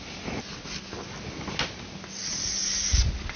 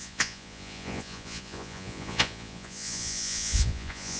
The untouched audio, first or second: first